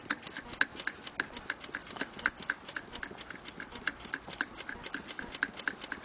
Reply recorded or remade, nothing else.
recorded